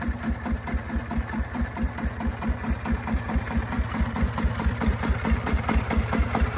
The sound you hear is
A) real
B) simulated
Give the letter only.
A